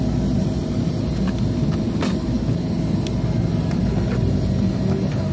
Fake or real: real